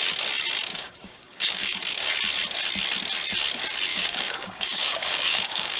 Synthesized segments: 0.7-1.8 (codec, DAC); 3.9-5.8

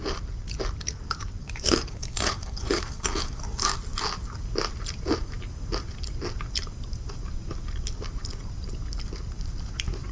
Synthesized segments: 1.4-3.8 (codec, DAC)

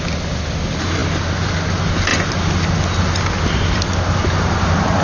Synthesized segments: none

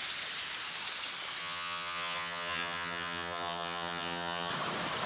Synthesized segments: 1.4-4.5 (vocoder, HiFi-GAN)

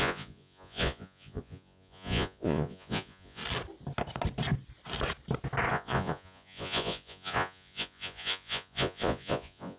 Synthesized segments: 0.0-3.4 (vocoder, Vocos); 5.7-9.8

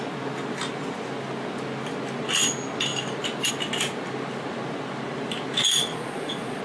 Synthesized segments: 5.9-6.6 (vocoder, Vocos)

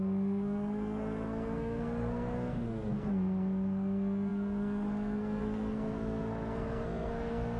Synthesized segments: 0.0-7.6 (codec, SNAC)

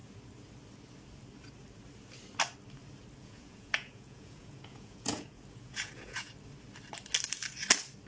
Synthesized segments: 3.2-6.3 (vocoder, Vocos)